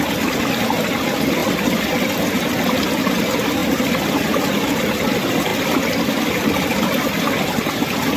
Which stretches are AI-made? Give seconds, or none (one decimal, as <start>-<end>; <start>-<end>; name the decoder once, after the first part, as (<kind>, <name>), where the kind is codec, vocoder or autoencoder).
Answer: none